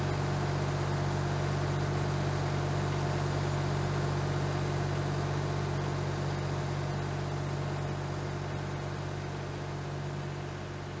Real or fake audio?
real